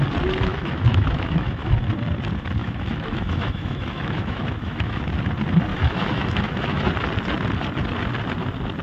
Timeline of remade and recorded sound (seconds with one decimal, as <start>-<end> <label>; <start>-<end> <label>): 0.0-0.5 recorded; 0.5-1.7 remade; 1.7-2.6 recorded; 2.6-5.0 remade; 5.0-5.7 recorded; 5.7-6.9 remade; 6.9-8.8 recorded